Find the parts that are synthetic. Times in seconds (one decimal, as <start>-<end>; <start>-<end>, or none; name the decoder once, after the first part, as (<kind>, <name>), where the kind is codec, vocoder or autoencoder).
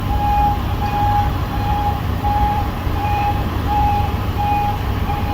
0.9-4.1 (vocoder, BigVGAN v2)